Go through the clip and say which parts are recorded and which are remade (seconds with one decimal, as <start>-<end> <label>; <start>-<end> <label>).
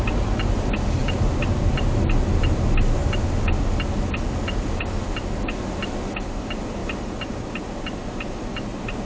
0.0-6.8 recorded; 6.8-7.8 remade; 7.8-9.1 recorded